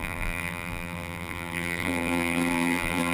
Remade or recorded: remade